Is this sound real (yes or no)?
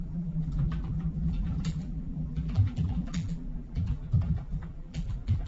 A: no